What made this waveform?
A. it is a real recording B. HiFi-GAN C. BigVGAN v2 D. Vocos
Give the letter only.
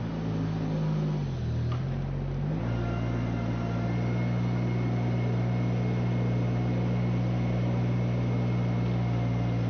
A